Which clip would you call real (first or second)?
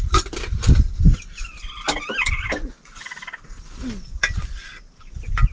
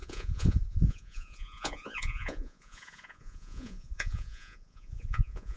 first